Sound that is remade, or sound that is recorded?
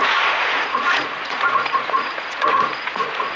remade